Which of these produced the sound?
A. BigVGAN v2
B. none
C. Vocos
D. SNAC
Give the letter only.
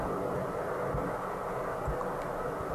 B